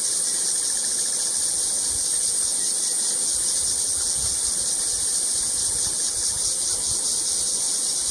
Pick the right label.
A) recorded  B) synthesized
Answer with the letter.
A